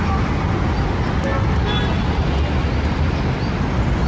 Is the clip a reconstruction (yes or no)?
no